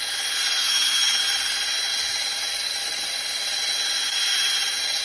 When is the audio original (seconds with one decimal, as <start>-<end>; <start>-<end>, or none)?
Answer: 0.0-0.6; 1.2-5.0